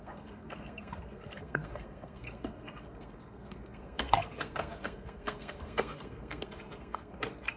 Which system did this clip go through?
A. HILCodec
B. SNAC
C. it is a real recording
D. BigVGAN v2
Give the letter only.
B